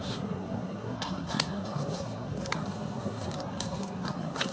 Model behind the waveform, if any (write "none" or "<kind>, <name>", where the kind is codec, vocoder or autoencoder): codec, SNAC